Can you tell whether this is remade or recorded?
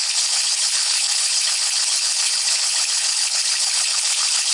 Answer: remade